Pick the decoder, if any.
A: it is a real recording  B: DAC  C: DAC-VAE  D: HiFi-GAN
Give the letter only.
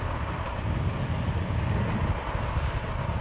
A